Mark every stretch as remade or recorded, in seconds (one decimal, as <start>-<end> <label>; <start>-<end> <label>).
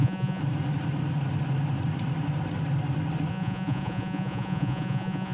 0.0-0.4 remade; 0.4-3.3 recorded; 3.3-5.3 remade